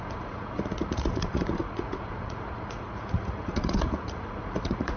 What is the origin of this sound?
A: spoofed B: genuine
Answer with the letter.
A